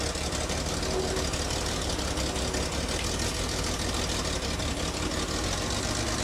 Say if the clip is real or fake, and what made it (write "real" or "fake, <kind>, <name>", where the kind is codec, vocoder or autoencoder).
real